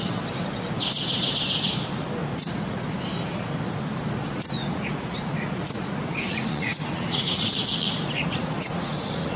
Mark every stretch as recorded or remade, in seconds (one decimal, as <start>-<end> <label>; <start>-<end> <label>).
0.0-2.2 recorded; 2.2-3.0 remade; 3.0-4.3 recorded; 4.3-9.4 remade